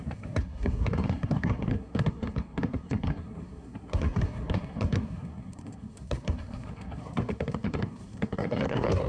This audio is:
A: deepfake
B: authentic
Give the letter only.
A